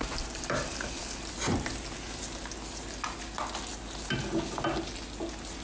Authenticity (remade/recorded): recorded